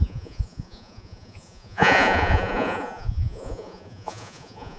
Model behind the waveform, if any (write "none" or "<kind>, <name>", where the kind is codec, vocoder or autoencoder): vocoder, Vocos